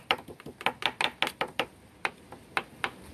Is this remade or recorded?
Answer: recorded